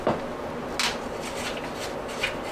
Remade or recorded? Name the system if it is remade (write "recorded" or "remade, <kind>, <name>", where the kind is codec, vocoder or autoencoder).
recorded